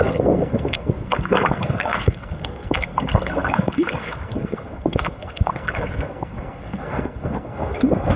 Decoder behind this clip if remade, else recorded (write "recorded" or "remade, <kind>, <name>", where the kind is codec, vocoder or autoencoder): remade, codec, SNAC